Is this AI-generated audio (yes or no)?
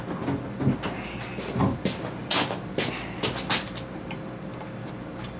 no